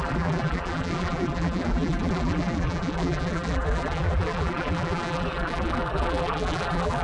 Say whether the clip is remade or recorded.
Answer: remade